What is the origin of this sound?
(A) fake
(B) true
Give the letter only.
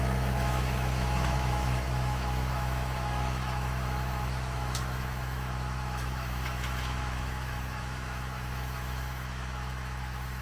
A